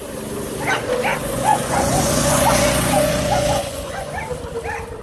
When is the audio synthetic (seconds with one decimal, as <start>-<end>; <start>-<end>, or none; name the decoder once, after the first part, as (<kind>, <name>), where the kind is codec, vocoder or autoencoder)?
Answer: 1.2-4.2 (vocoder, Vocos)